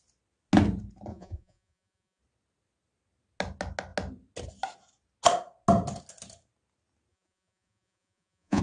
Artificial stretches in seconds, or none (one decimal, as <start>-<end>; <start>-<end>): 1.1-2.2; 7.1-8.6

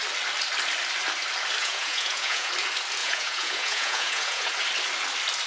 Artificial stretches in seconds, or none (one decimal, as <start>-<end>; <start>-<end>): 1.6-2.5; 3.0-4.5

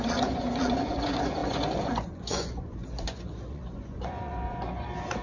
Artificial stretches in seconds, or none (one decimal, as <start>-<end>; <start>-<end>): 0.0-5.2